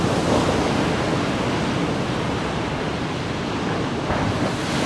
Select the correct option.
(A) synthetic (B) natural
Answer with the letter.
B